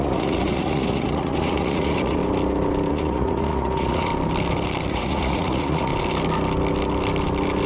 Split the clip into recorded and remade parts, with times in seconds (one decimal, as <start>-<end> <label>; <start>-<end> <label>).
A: 0.0-2.2 remade; 2.2-2.9 recorded; 2.9-4.1 remade; 4.1-4.9 recorded; 4.9-5.9 remade; 5.9-7.7 recorded